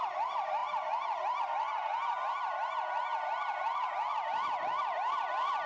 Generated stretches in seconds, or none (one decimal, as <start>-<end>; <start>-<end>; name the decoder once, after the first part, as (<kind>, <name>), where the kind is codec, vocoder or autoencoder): none